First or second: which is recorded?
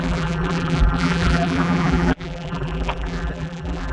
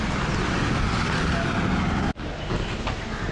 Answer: second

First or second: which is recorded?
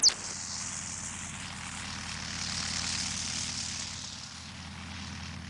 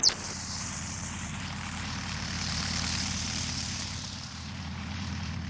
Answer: first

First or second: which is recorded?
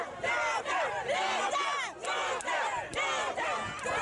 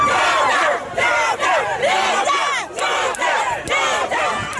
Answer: first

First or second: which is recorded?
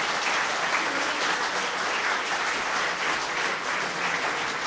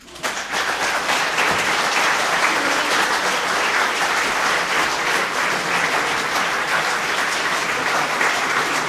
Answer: first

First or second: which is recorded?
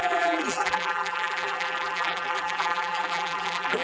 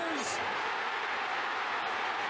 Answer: second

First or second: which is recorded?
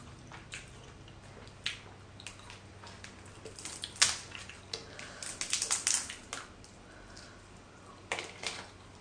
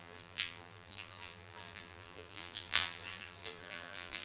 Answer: first